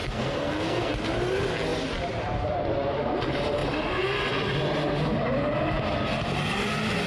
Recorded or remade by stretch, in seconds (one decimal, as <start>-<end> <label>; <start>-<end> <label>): 0.0-0.9 remade; 0.9-7.1 recorded